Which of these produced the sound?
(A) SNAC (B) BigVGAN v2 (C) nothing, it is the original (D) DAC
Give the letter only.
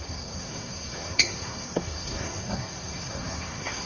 A